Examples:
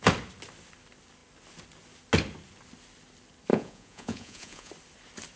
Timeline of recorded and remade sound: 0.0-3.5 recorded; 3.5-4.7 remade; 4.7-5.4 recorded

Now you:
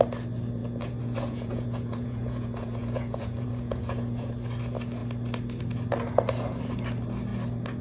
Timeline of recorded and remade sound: 0.0-0.6 recorded; 0.6-4.3 remade; 4.3-7.8 recorded

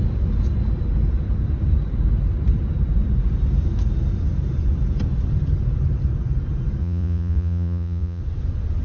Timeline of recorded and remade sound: 0.0-6.8 recorded; 6.8-8.2 remade; 8.2-8.8 recorded